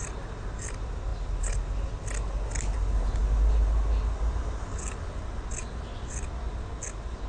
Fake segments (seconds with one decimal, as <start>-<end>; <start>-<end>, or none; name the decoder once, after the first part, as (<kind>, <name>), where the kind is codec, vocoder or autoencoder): none